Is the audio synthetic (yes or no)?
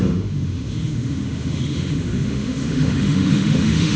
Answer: yes